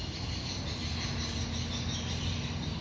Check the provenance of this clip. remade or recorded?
recorded